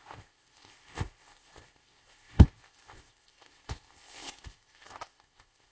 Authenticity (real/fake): fake